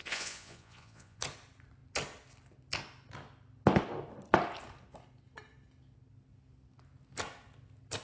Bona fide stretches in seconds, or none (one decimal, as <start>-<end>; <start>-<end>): 1.2-8.0